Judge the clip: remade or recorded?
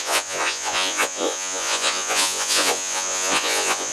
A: remade